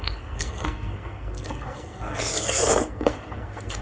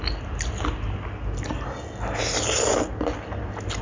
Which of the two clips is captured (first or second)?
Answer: second